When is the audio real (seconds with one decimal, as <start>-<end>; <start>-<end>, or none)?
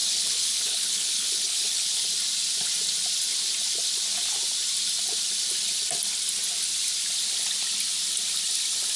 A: 2.1-9.0